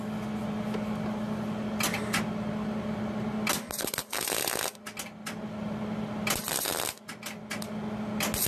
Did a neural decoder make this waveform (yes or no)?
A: no